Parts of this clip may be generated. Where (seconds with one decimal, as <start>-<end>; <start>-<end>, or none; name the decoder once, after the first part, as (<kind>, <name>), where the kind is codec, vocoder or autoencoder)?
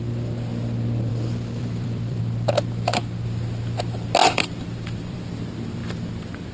1.1-2.2 (vocoder, BigVGAN v2); 4.2-5.3